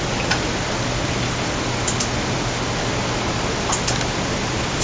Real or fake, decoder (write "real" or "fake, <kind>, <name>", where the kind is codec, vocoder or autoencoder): real